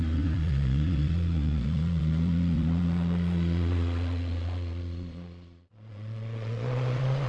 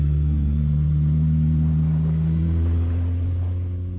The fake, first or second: first